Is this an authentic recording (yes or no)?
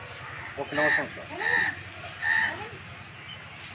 yes